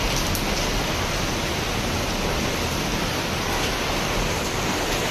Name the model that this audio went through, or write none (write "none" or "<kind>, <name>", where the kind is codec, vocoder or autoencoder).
none